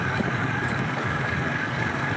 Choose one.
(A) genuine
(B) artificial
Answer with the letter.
B